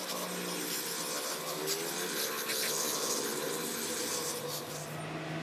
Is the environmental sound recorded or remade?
recorded